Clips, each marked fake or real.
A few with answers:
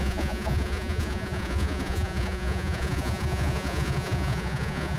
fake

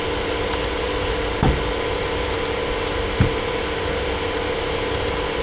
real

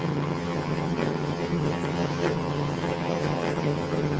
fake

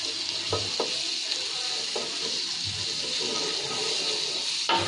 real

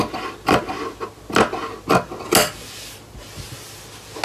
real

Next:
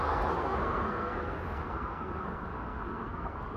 fake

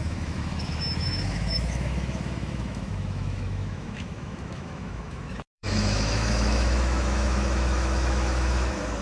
fake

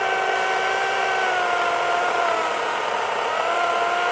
real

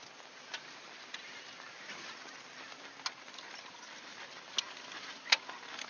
real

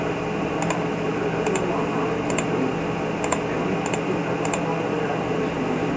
real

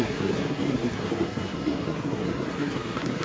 fake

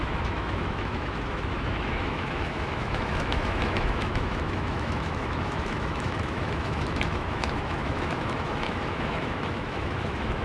fake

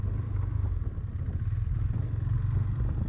real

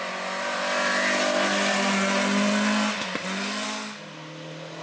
real